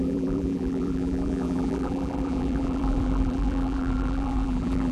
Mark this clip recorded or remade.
remade